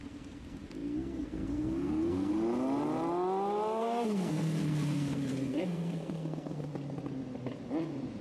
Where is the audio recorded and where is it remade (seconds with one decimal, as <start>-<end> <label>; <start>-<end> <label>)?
0.0-2.3 remade; 2.3-3.8 recorded; 3.8-6.7 remade; 6.7-8.2 recorded

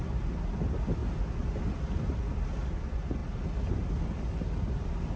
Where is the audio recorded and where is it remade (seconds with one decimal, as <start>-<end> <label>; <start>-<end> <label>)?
0.0-5.2 recorded